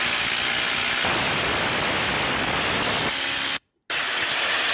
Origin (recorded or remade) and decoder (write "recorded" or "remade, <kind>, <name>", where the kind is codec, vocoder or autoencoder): recorded